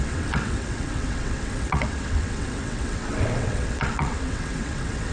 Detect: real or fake fake